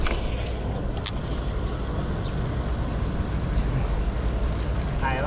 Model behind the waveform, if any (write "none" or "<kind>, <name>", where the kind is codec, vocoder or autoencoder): none